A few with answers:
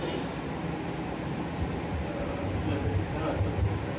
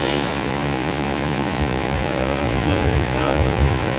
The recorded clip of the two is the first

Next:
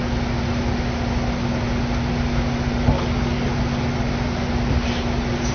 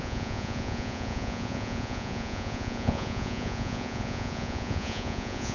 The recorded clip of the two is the first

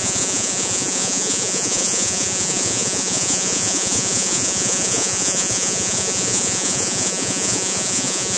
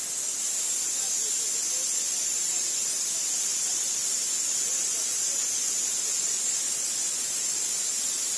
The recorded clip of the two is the second